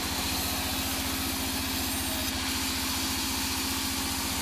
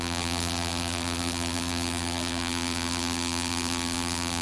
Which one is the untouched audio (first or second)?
first